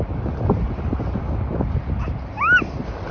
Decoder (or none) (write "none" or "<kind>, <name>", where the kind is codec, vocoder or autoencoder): none